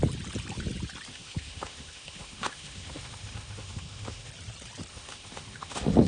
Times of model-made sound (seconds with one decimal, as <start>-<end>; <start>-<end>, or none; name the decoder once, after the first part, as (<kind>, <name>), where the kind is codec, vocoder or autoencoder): 1.1-4.3 (autoencoder, DAC-VAE); 4.9-6.1